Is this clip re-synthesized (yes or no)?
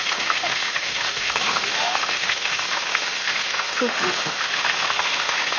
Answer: yes